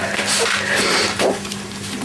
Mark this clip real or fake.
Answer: real